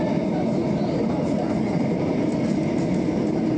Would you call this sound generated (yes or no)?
yes